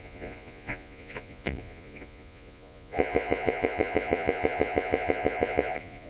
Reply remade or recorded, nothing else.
remade